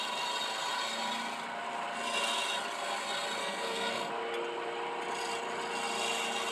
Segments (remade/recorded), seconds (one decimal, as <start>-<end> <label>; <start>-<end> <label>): 0.0-3.4 recorded; 3.4-4.1 remade; 4.1-6.5 recorded